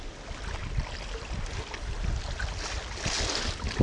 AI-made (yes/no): no